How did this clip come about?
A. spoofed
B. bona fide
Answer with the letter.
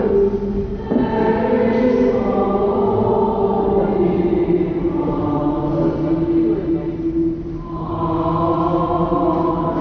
B